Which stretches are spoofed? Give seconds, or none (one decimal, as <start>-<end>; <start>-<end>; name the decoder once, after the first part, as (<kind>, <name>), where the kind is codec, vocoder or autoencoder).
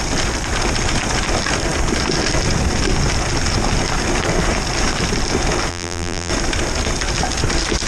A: 5.7-6.3 (vocoder, BigVGAN v2)